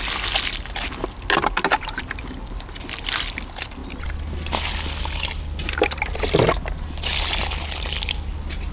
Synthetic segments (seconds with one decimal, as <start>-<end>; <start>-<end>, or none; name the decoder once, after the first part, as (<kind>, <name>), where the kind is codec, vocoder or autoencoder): none